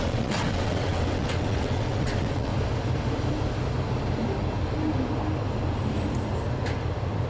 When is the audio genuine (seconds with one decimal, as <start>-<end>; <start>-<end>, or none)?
2.5-7.3